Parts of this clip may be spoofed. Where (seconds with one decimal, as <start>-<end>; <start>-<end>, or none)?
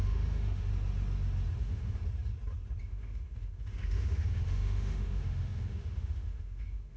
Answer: 0.0-0.7; 1.6-2.0; 2.8-7.0